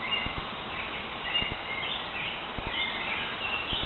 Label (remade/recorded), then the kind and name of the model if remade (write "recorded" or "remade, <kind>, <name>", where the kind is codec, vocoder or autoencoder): recorded